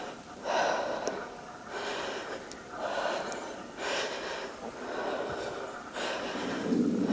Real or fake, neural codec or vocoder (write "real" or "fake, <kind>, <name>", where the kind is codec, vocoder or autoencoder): real